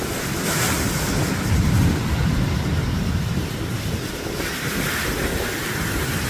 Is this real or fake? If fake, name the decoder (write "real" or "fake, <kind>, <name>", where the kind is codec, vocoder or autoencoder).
real